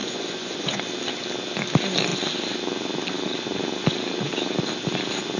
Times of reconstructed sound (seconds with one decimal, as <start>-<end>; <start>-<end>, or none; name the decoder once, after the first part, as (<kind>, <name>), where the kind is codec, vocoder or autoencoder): 0.0-0.8 (vocoder, Vocos)

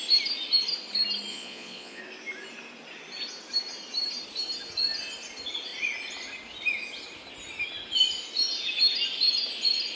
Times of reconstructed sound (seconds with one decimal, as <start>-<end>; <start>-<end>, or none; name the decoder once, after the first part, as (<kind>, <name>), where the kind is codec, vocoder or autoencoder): 1.3-2.0 (vocoder, Vocos)

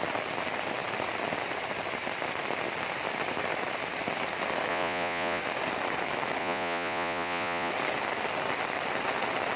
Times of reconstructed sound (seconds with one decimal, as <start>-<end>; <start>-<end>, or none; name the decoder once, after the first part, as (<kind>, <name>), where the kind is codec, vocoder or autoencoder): 4.7-5.4 (vocoder, Vocos); 6.4-7.7

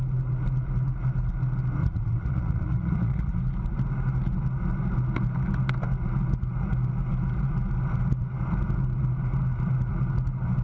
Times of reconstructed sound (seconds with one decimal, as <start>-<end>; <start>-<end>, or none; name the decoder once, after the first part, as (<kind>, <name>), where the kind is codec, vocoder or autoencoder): 1.8-3.4 (vocoder, Vocos)

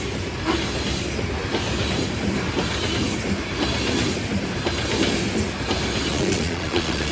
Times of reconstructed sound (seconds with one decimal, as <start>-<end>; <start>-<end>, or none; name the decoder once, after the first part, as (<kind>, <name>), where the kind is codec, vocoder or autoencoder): 6.1-7.1 (vocoder, Vocos)

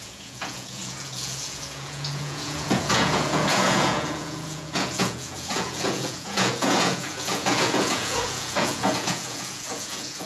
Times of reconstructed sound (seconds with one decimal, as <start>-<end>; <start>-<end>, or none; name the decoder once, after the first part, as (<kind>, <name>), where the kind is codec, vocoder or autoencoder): 0.0-10.3 (vocoder, Vocos)